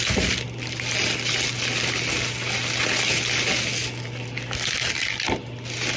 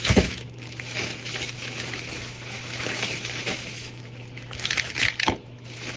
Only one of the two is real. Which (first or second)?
first